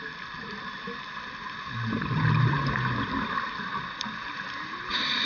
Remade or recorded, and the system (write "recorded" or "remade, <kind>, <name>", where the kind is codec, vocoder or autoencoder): recorded